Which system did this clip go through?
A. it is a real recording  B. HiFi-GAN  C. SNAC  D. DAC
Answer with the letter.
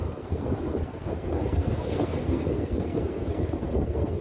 C